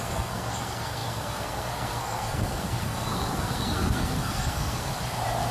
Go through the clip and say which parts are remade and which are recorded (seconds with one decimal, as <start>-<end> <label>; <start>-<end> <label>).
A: 0.0-4.9 remade; 4.9-5.5 recorded